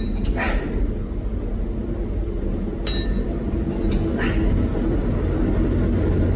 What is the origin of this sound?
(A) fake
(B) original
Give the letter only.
B